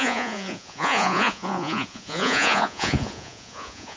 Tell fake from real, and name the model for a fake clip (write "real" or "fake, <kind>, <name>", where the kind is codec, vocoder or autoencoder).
fake, vocoder, Vocos